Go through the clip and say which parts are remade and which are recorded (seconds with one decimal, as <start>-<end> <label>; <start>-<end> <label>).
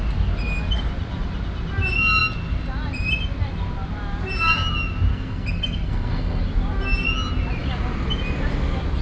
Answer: 0.0-5.1 recorded; 5.1-6.4 remade; 6.4-9.0 recorded